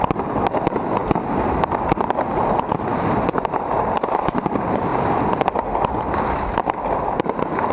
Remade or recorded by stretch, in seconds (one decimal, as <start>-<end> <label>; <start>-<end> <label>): 0.0-1.0 remade; 1.0-2.4 recorded; 2.4-4.9 remade; 4.9-6.0 recorded; 6.0-7.7 remade